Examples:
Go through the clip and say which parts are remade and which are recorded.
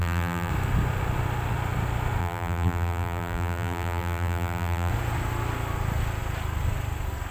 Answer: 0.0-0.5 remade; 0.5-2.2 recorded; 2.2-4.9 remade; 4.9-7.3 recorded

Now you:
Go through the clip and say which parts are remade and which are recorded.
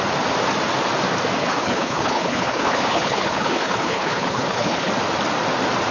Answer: 0.0-1.4 recorded; 1.4-4.9 remade; 4.9-5.9 recorded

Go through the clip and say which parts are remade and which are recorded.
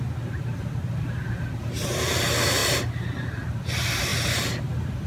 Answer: 0.0-5.1 recorded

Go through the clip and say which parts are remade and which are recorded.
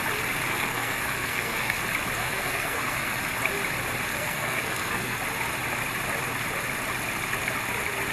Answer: 0.0-0.5 recorded; 0.5-1.8 remade; 1.8-2.2 recorded; 2.2-3.2 remade; 3.2-4.1 recorded; 4.1-5.2 remade; 5.2-8.1 recorded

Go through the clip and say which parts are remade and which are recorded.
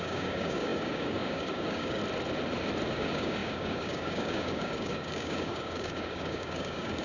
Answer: 0.0-2.0 remade; 2.0-2.9 recorded; 2.9-7.0 remade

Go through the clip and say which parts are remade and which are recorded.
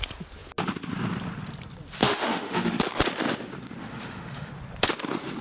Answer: 0.0-2.0 recorded; 2.0-2.8 remade; 2.8-3.8 recorded; 3.8-4.5 remade; 4.5-5.4 recorded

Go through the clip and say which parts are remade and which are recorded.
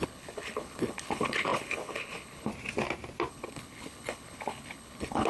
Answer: 0.0-2.5 remade; 2.5-3.3 recorded; 3.3-5.3 remade